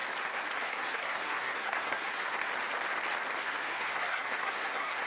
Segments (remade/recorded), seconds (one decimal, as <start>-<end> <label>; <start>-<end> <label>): 0.0-0.6 recorded; 0.6-2.5 remade; 2.5-3.4 recorded; 3.4-5.1 remade